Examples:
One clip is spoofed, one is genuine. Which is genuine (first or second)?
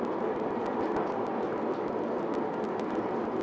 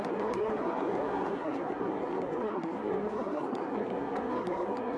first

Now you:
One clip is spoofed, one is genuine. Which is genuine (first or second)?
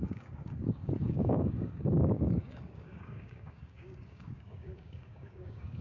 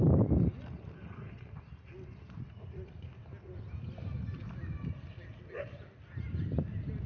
second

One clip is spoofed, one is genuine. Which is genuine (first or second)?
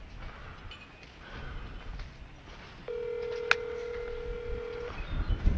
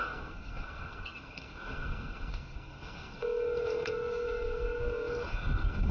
first